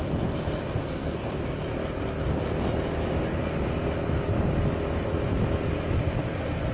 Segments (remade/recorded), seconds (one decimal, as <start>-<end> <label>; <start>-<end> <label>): 0.0-0.8 recorded; 0.8-1.3 remade; 1.3-6.7 recorded